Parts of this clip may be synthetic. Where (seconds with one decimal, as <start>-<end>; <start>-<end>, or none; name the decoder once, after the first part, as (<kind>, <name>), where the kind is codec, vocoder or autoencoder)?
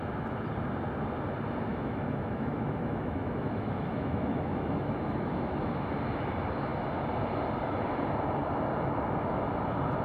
1.7-6.2 (autoencoder, DAC-VAE)